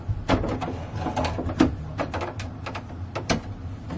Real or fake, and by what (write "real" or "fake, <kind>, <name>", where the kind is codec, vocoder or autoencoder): real